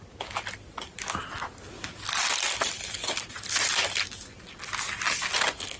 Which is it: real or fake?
real